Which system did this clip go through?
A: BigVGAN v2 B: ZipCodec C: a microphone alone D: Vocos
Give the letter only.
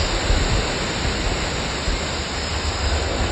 C